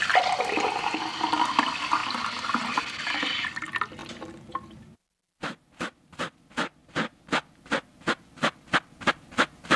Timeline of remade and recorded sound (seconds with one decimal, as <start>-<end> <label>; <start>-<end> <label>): 0.0-9.8 recorded

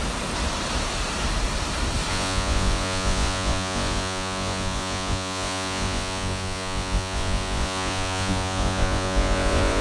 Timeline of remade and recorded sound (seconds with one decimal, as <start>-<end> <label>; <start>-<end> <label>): 0.0-2.1 recorded; 2.1-9.8 remade

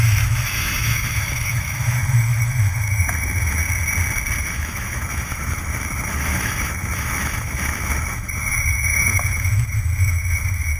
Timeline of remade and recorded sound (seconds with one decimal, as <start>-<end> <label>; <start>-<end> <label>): 0.0-3.6 remade; 3.6-4.4 recorded; 4.4-10.8 remade

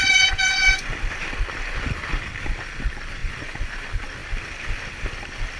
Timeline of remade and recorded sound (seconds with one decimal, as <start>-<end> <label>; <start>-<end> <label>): 0.0-0.9 remade; 0.9-3.2 recorded; 3.2-3.7 remade; 3.7-5.6 recorded

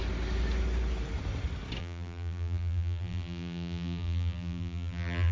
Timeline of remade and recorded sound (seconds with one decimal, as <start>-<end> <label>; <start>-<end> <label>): 0.0-1.8 recorded; 1.8-5.3 remade

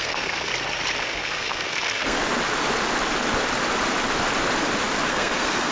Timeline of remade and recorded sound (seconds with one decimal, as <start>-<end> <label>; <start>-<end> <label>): 0.0-0.5 remade; 0.5-1.0 recorded; 1.0-2.2 remade; 2.2-5.1 recorded; 5.1-5.7 remade